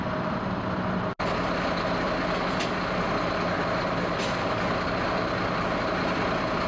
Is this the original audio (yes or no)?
yes